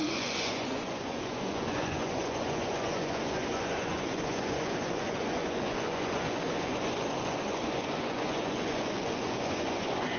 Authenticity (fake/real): fake